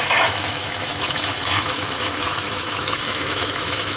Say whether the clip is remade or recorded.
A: remade